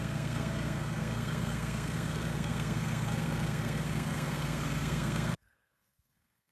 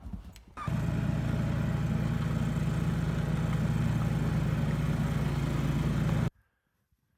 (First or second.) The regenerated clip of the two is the first